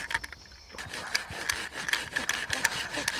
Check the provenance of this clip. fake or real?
real